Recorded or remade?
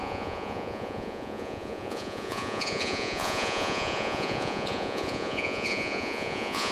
remade